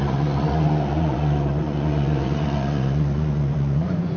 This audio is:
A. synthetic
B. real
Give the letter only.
A